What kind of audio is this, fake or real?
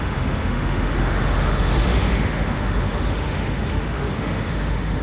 fake